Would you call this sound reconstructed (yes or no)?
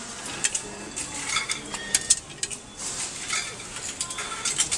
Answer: no